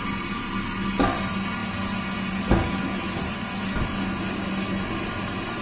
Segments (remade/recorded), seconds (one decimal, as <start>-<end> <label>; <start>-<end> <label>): 0.0-5.6 recorded